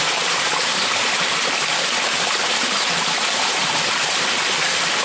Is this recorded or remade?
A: recorded